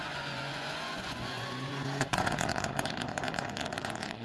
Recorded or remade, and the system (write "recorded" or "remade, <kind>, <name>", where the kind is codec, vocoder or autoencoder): remade, vocoder, Vocos